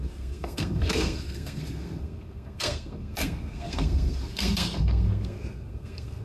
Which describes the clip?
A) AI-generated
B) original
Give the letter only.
A